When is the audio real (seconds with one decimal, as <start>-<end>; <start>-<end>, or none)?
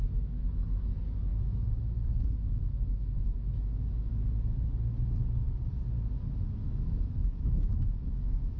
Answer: 4.1-6.6